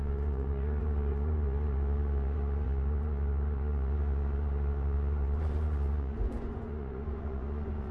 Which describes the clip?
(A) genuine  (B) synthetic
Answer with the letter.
B